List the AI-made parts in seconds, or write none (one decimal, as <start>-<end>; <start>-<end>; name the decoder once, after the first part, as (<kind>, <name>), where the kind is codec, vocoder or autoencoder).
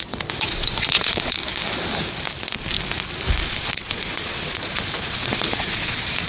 0.0-1.4 (vocoder, Vocos); 3.6-6.3